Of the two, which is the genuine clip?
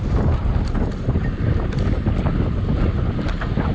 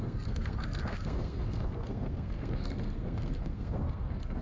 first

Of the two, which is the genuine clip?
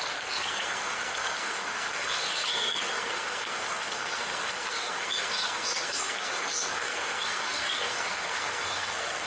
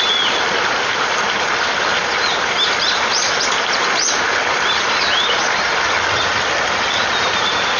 second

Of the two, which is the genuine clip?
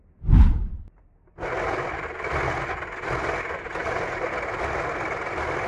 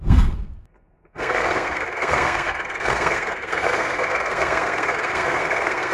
first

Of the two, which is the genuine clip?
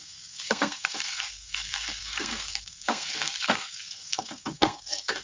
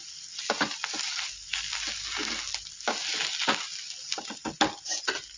second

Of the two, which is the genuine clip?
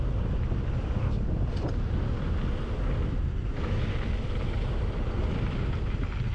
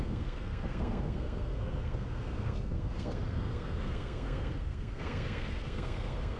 first